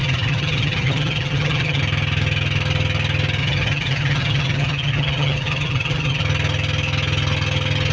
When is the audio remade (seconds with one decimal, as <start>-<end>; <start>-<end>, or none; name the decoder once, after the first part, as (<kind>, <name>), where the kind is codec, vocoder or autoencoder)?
0.0-1.8 (vocoder, HiFi-GAN); 3.4-6.2